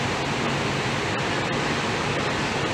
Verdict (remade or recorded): recorded